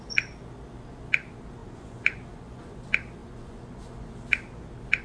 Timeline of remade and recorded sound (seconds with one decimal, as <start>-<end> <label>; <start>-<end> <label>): 0.0-1.6 recorded; 1.6-2.8 remade; 2.8-3.2 recorded; 3.2-4.1 remade; 4.1-5.0 recorded